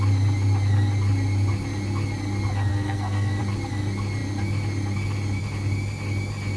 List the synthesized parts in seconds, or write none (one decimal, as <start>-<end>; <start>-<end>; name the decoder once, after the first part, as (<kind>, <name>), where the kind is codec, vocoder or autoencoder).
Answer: 2.7-3.4 (codec, SNAC)